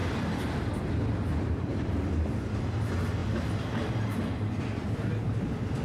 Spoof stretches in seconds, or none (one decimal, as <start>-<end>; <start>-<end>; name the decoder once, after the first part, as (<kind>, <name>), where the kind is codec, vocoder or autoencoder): none